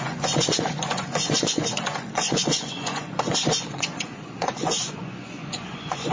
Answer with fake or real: fake